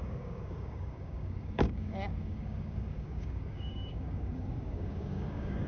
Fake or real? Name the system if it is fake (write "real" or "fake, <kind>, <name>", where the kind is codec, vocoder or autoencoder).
fake, codec, DAC